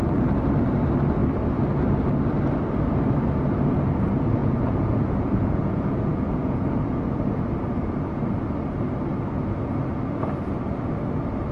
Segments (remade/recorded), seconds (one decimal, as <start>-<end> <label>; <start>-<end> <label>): 0.0-4.4 recorded; 4.4-7.1 remade; 7.1-11.5 recorded